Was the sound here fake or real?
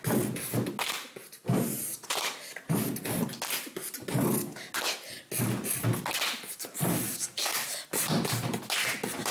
real